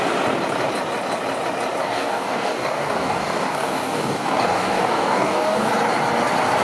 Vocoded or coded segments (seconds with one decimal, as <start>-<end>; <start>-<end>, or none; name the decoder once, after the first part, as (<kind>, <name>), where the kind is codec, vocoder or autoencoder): 1.8-5.7 (codec, DAC)

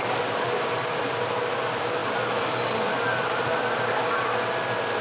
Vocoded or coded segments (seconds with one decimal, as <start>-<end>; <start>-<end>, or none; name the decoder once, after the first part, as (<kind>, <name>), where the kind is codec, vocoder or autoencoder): none

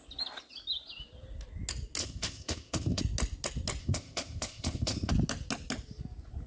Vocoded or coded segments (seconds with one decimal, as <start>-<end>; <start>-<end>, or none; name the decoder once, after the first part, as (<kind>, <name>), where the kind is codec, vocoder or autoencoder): 2.0-3.0 (codec, ZipCodec); 3.8-5.1

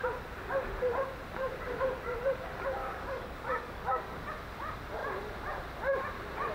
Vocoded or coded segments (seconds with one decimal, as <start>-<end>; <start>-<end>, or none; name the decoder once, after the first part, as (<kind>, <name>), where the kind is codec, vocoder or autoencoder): 2.8-4.2 (codec, DAC)

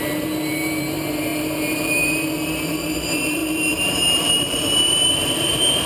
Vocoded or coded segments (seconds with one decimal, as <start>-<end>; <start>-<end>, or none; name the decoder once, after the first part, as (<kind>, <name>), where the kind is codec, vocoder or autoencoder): 0.0-5.8 (vocoder, BigVGAN v2)

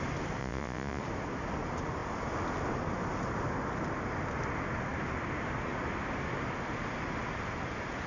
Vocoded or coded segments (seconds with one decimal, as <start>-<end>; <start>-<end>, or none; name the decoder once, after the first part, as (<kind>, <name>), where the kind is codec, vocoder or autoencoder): 0.4-1.0 (vocoder, Vocos)